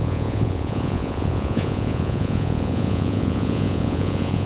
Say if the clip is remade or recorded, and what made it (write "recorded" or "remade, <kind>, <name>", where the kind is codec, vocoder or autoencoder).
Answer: remade, vocoder, Vocos